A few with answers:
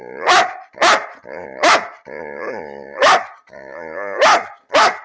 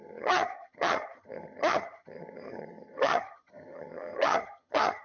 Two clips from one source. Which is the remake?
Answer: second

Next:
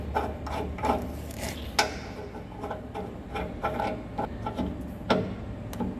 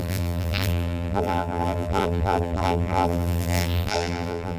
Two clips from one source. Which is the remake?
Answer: second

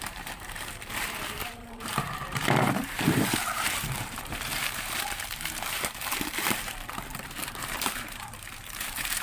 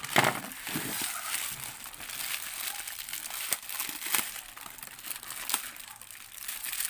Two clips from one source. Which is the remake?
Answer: first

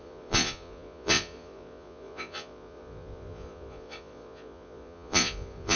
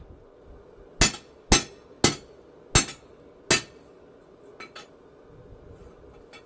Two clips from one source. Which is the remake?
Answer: first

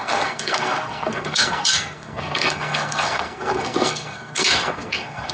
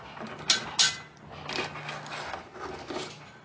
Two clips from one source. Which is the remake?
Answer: first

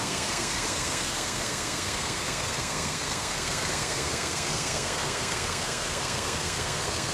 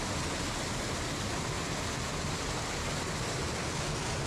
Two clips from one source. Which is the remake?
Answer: first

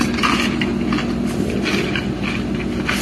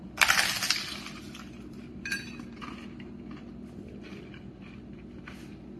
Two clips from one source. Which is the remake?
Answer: second